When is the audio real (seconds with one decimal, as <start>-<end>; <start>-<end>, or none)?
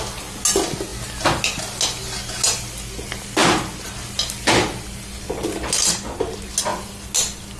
0.0-7.6